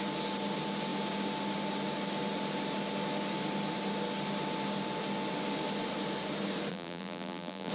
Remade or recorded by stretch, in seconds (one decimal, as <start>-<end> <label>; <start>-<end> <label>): 0.0-6.7 recorded; 6.7-7.7 remade